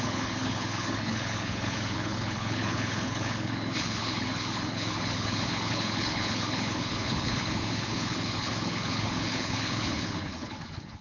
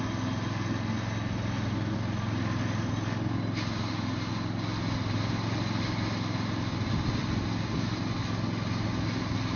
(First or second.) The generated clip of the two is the first